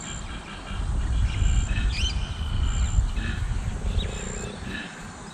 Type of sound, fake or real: real